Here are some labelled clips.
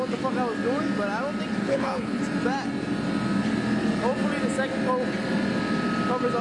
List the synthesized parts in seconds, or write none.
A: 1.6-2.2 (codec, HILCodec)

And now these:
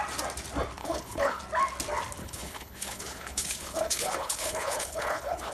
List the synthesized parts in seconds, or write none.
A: 0.8-1.4 (codec, HILCodec); 2.2-5.5

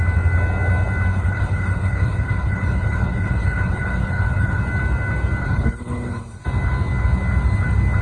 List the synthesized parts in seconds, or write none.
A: 1.1-4.6 (codec, HILCodec); 5.4-6.4

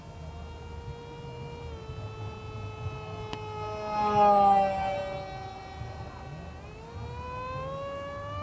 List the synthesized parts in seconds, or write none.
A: none

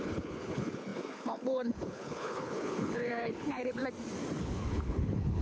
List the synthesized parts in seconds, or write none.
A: 0.0-3.8 (codec, HILCodec); 4.4-5.4

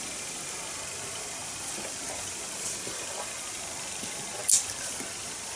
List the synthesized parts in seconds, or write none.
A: none

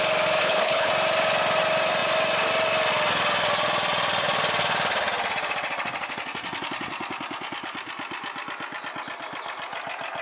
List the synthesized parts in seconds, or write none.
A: 0.4-0.9 (codec, HILCodec)

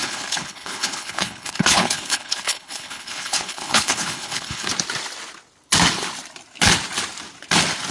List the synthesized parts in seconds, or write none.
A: 0.0-4.7 (codec, HILCodec)